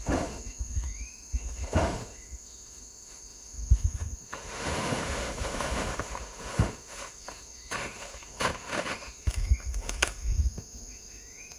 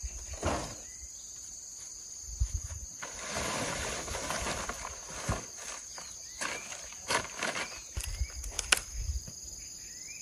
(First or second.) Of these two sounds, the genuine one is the second